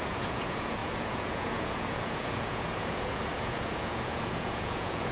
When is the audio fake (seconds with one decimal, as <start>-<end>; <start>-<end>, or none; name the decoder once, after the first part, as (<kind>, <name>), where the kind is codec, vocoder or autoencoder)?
0.0-5.1 (vocoder, Vocos)